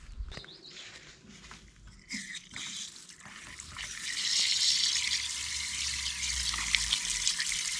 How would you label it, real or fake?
real